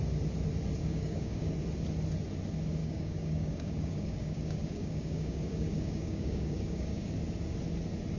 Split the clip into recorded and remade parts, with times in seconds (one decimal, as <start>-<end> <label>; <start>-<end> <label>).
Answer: 0.0-0.8 recorded; 0.8-1.5 remade; 1.5-2.8 recorded; 2.8-7.1 remade; 7.1-8.2 recorded